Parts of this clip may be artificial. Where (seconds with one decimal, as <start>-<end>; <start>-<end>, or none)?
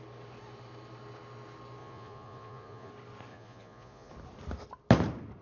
1.8-2.9; 3.3-4.1